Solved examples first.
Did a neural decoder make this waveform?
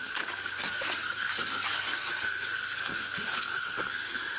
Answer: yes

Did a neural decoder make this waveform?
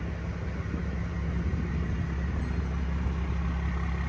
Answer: no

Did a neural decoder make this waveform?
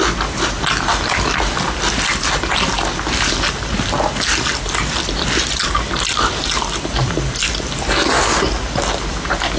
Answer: no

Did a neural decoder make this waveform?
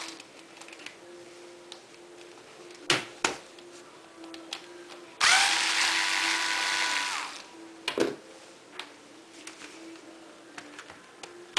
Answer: no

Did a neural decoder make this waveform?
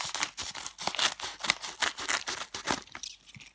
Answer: no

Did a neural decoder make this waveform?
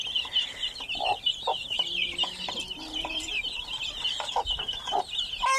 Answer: no